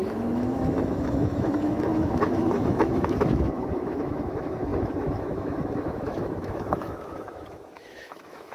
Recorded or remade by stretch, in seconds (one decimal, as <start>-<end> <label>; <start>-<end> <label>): 0.0-8.5 remade